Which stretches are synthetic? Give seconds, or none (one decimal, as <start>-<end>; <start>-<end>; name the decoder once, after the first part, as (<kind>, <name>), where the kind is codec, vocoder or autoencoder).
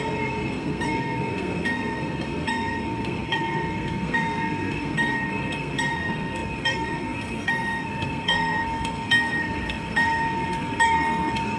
0.0-11.6 (codec, SNAC)